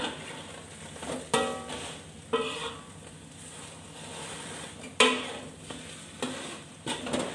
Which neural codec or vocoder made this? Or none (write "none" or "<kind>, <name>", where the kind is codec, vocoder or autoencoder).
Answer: none